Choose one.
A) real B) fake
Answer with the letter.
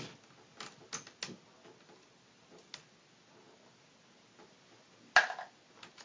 A